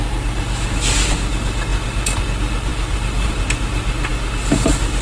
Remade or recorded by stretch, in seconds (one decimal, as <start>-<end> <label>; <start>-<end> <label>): 0.0-2.7 recorded; 2.7-3.4 remade; 3.4-5.0 recorded